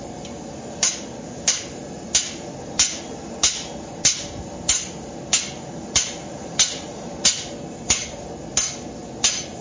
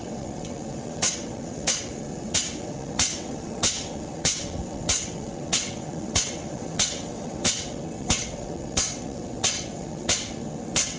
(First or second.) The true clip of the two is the first